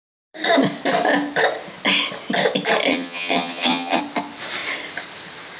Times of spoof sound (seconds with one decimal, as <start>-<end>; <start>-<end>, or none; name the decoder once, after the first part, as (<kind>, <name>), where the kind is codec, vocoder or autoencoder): 2.9-4.0 (vocoder, HiFi-GAN)